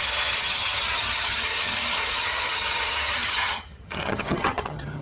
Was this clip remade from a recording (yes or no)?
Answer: yes